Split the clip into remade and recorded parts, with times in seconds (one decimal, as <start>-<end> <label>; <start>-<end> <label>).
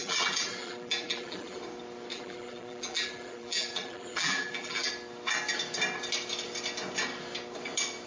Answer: 0.0-1.6 remade; 1.6-2.1 recorded; 2.1-4.9 remade; 4.9-8.1 recorded